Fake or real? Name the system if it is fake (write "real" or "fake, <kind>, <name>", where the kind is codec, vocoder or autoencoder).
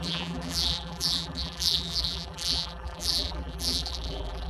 fake, vocoder, BigVGAN v2